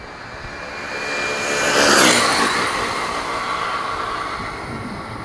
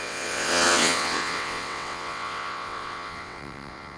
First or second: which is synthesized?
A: second